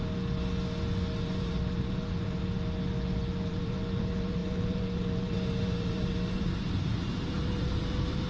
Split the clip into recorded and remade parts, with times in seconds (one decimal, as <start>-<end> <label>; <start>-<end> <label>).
0.0-1.2 recorded; 1.2-2.4 remade; 2.4-3.5 recorded; 3.5-8.3 remade